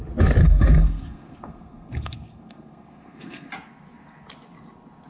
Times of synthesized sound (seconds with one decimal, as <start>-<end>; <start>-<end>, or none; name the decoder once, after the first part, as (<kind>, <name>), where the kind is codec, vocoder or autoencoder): 0.4-3.5 (codec, SNAC)